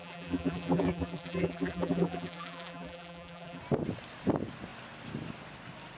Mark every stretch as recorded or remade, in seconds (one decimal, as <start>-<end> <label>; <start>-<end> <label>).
0.0-3.6 remade; 3.6-6.0 recorded